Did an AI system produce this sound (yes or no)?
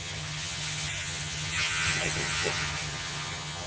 yes